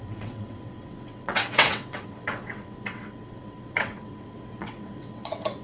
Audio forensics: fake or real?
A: fake